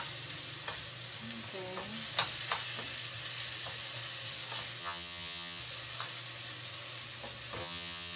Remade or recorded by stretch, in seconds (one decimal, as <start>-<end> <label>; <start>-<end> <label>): 0.0-4.8 recorded; 4.8-5.6 remade; 5.6-7.6 recorded; 7.6-8.2 remade

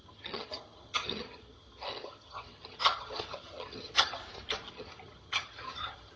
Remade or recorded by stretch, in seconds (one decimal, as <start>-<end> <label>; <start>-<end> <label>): 0.0-4.2 remade; 4.2-4.7 recorded; 4.7-6.2 remade